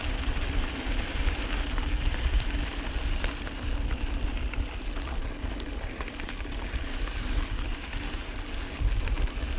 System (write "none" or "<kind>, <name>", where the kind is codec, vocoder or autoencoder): none